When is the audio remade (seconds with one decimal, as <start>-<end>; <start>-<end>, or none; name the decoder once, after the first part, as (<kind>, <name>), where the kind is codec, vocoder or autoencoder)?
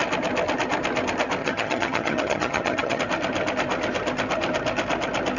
1.4-3.0 (vocoder, HiFi-GAN)